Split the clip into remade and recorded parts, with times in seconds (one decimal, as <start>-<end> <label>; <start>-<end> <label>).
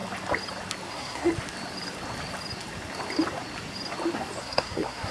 0.0-0.9 recorded; 0.9-1.3 remade; 1.3-4.4 recorded; 4.4-5.1 remade